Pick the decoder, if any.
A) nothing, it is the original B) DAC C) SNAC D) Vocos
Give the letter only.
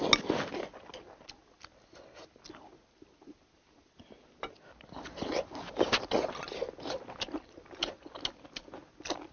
A